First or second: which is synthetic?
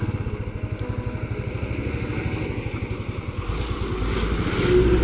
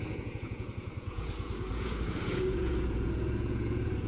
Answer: second